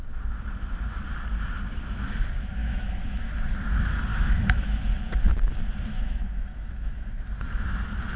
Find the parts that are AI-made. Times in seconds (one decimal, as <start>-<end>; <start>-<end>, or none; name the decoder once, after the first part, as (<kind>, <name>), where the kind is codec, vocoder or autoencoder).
2.6-3.3 (autoencoder, DAC-VAE); 4.1-4.8; 5.9-7.1